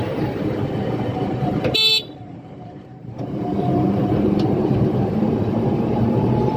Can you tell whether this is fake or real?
fake